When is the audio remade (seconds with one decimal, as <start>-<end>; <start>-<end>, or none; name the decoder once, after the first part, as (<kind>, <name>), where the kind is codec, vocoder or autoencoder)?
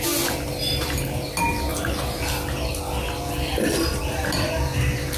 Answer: none